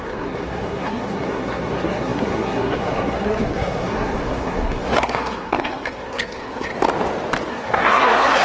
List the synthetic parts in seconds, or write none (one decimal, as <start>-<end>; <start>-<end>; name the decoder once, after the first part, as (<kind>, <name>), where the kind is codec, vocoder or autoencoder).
0.0-6.7 (codec, SNAC); 7.5-8.4